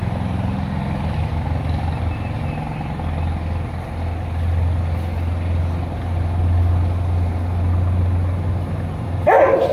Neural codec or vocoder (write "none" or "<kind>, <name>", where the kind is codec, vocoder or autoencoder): none